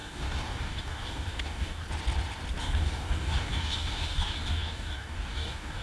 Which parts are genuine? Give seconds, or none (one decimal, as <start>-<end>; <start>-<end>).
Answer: 1.8-2.6

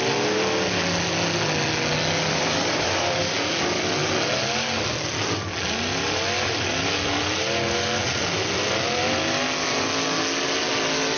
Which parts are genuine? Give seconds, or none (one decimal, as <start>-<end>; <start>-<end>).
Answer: 0.0-2.3; 3.5-11.2

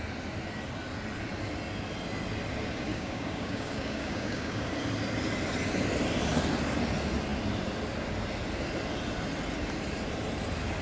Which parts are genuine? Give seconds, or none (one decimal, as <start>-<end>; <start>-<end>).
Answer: 0.0-2.9; 4.7-10.8

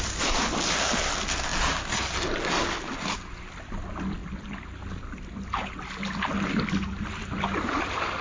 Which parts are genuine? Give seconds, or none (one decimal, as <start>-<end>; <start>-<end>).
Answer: 0.0-8.2

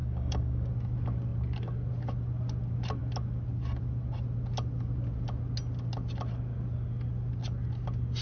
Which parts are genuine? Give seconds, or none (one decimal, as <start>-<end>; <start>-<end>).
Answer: 0.7-8.2